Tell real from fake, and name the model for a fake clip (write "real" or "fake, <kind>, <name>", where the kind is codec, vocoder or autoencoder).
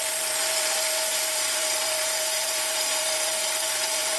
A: fake, vocoder, BigVGAN v2